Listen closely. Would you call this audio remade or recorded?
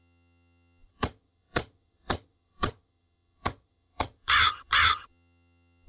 remade